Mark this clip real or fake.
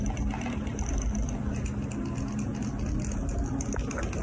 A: real